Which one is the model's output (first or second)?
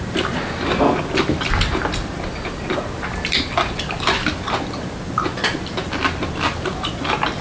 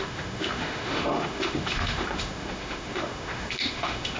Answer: second